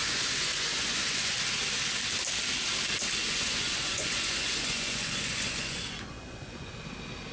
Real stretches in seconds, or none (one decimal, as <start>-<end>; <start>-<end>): 1.3-3.2; 6.7-7.3